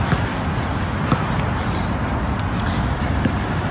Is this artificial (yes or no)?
no